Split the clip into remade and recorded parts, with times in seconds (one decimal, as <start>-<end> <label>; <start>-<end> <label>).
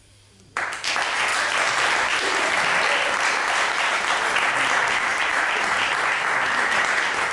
0.0-7.3 recorded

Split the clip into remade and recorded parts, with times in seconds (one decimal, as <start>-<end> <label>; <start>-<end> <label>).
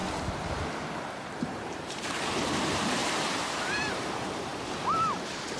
0.0-1.4 recorded; 1.4-4.5 remade; 4.5-5.6 recorded